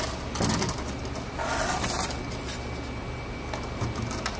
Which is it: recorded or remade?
recorded